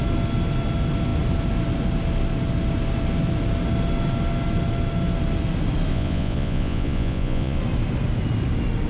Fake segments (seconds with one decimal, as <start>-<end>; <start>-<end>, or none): 5.9-7.6